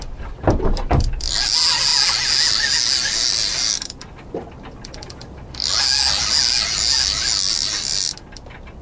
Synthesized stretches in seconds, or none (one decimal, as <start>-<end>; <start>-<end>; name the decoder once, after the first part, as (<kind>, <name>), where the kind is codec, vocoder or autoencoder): none